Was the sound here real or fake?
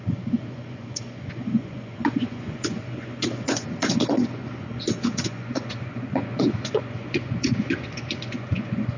fake